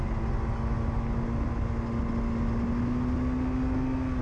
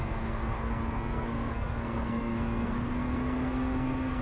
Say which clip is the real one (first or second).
first